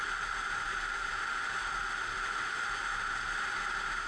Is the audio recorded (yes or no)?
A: yes